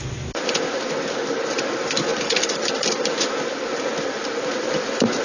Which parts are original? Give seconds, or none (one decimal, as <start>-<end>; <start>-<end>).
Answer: 0.0-5.2